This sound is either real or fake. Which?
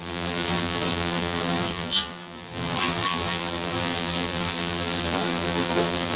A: fake